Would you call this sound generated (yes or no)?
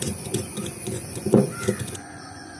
yes